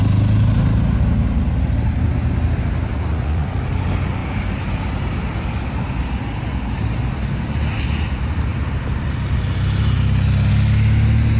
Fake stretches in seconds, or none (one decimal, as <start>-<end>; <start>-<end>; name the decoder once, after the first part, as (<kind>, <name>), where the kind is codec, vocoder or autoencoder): 2.9-3.6 (vocoder, Vocos)